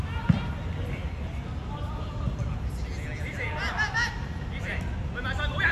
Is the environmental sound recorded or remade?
recorded